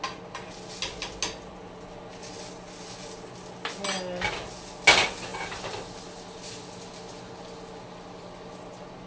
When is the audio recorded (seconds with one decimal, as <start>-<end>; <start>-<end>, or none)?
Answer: 0.0-9.1